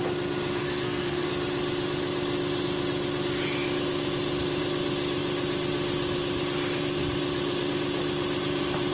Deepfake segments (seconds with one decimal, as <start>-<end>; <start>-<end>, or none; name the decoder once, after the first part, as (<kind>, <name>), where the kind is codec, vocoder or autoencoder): 0.6-1.3 (codec, SNAC)